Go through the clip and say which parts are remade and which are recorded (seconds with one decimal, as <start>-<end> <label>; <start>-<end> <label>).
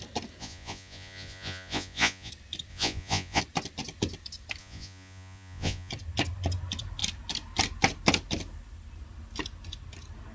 0.0-0.4 recorded; 0.4-2.3 remade; 2.3-2.7 recorded; 2.7-3.4 remade; 3.4-4.6 recorded; 4.6-5.9 remade; 5.9-10.3 recorded